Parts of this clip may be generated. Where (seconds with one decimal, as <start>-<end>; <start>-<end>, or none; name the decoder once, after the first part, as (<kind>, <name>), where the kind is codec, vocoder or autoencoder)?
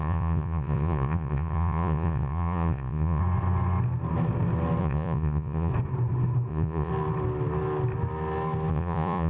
0.0-3.2 (vocoder, Vocos); 4.8-5.7; 6.5-6.9; 8.7-9.3